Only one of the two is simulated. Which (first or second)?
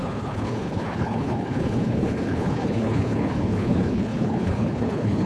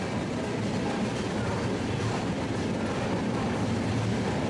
first